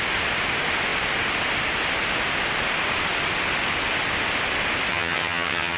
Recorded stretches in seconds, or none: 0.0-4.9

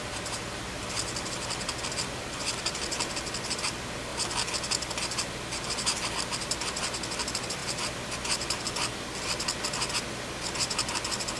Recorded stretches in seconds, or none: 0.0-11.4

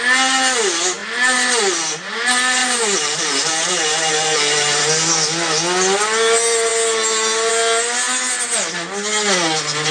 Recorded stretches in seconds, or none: 0.0-2.6; 4.8-9.9

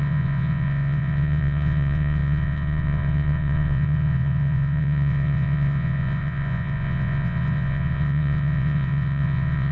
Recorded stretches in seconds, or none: none

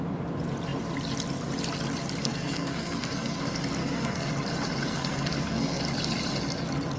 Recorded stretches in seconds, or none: 0.0-2.2; 3.4-3.8; 4.3-4.9; 5.8-7.0